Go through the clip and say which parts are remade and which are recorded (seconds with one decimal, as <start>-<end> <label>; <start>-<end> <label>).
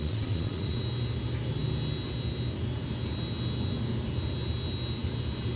0.0-0.8 remade; 0.8-5.6 recorded